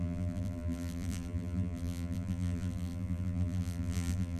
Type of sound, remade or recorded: remade